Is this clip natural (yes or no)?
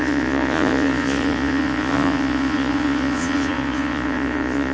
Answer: no